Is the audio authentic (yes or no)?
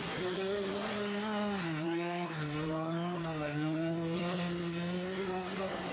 no